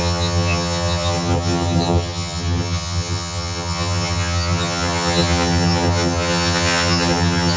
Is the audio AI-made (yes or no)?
yes